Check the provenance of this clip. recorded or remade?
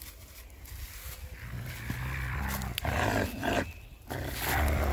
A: recorded